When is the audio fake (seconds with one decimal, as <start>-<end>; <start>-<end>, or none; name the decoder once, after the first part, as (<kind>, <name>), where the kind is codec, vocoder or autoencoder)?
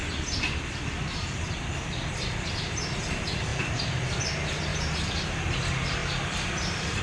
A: 0.0-2.8 (vocoder, BigVGAN v2); 3.5-4.2; 6.0-7.0